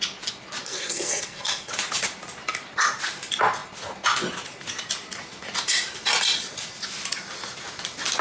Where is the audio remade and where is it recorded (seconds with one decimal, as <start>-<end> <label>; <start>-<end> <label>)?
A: 0.0-0.6 recorded; 0.6-1.7 remade; 1.7-8.2 recorded